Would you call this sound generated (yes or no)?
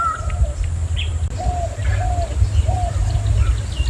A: no